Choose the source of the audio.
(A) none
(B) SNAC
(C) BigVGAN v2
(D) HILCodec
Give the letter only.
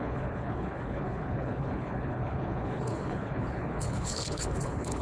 D